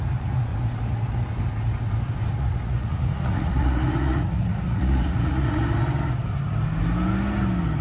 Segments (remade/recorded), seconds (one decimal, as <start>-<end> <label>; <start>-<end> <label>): 0.0-0.5 remade; 0.5-2.3 recorded; 2.3-5.6 remade; 5.6-7.8 recorded

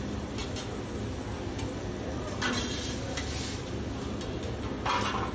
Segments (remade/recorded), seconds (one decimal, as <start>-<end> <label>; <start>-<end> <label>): 0.0-5.3 recorded